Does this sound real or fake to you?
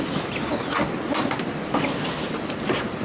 real